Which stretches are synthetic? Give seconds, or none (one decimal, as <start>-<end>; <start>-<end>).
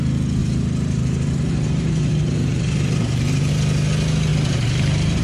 0.4-3.5; 4.3-5.2